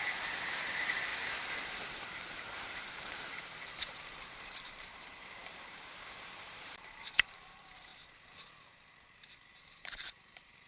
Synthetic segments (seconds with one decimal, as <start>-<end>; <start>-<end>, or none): 0.0-1.1; 2.7-7.9; 9.5-10.7